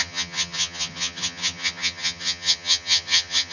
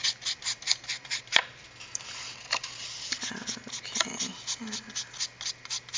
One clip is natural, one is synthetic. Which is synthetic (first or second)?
first